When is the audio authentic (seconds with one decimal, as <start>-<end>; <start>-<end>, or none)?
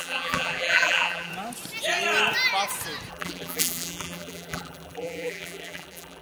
1.3-3.1